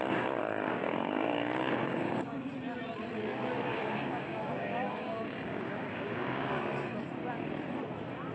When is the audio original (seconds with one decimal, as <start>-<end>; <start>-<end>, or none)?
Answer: 0.0-0.4; 2.5-3.7; 6.6-8.3